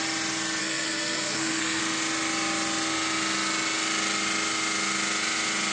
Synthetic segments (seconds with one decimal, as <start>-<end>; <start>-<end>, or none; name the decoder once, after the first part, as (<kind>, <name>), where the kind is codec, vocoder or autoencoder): 0.6-1.8 (codec, SNAC)